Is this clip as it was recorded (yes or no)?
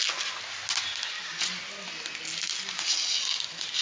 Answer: yes